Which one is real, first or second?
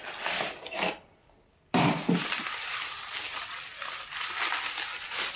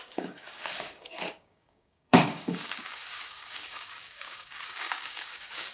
first